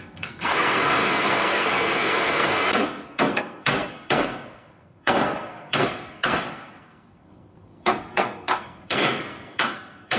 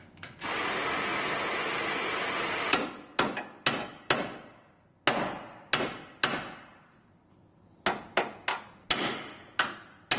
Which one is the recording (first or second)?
second